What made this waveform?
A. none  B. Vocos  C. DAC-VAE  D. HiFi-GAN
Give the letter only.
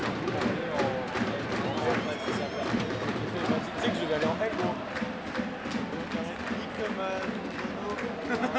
A